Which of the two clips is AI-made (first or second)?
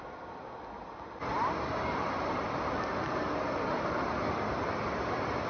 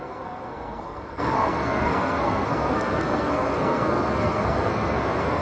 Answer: second